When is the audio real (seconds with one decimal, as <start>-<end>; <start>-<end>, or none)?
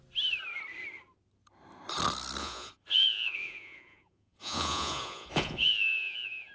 0.0-2.4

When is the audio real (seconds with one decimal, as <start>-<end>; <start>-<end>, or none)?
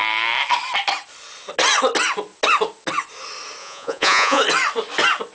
0.0-3.6; 4.4-5.3